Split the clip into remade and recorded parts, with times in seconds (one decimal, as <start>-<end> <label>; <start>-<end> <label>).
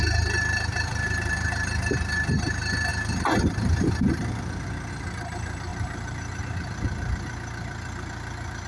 0.0-0.7 recorded; 0.7-1.9 remade; 1.9-5.7 recorded; 5.7-6.4 remade; 6.4-8.7 recorded